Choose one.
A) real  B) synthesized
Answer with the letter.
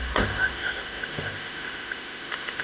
B